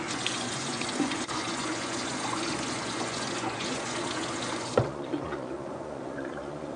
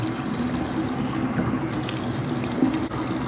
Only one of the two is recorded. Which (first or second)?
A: second